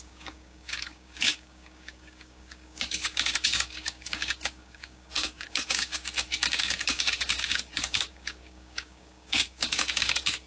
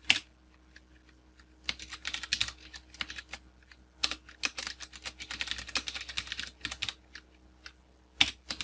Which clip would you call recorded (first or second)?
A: second